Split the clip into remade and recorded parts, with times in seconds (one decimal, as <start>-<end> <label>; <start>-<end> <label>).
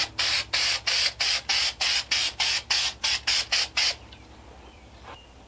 0.0-5.5 remade